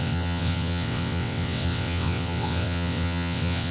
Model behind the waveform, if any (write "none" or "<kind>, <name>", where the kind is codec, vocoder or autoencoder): vocoder, WaveNeXt